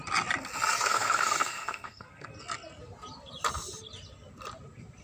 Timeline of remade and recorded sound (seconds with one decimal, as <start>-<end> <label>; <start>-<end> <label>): 0.0-0.9 recorded; 0.9-2.3 remade; 2.3-5.0 recorded